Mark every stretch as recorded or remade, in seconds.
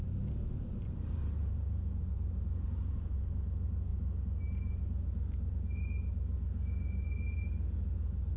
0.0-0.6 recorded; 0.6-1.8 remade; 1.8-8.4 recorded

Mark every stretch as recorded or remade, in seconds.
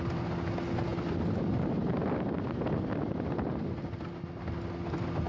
0.0-5.3 recorded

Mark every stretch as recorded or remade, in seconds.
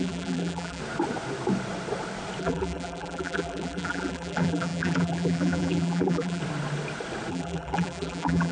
0.0-0.8 remade; 0.8-2.4 recorded; 2.4-6.4 remade; 6.4-7.3 recorded; 7.3-8.5 remade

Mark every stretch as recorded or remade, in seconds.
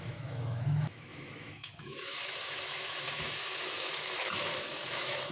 0.0-5.3 remade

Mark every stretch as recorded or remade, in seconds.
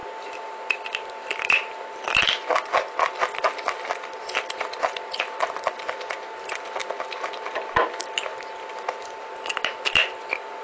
0.0-10.6 recorded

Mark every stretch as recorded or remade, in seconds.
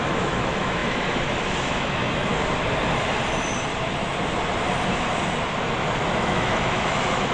0.0-2.3 remade; 2.3-6.1 recorded; 6.1-7.3 remade